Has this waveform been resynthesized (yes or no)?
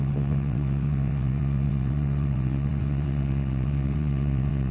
yes